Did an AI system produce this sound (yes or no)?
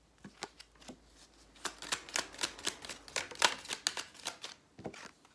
no